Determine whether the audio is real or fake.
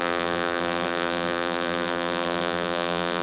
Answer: fake